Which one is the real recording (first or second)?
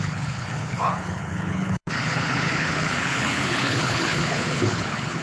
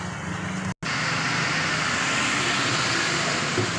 second